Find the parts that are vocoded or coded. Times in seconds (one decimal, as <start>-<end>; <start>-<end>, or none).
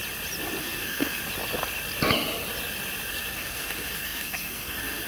0.6-1.2; 3.1-5.1